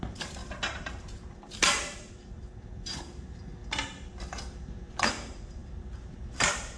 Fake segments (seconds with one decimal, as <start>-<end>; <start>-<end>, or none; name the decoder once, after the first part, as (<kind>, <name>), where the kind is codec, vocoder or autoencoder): 0.0-3.6 (vocoder, BigVGAN v2); 4.5-6.8